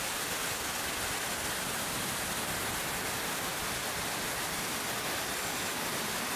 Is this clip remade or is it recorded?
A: recorded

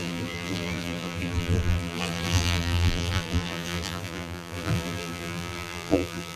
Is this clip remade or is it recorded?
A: remade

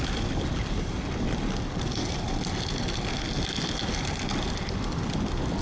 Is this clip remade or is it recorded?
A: recorded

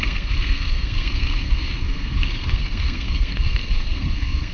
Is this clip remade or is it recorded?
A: remade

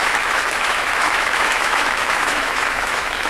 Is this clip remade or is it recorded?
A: remade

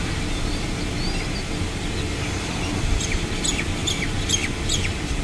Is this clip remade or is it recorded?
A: recorded